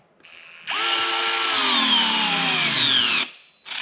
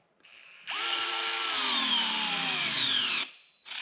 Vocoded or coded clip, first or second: second